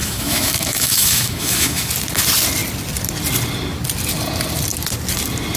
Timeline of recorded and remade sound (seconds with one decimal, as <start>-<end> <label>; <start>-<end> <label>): 0.0-1.9 remade; 1.9-5.6 recorded